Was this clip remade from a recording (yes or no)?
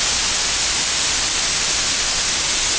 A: no